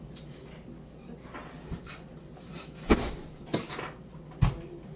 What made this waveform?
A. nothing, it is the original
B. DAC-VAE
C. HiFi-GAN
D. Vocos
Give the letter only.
A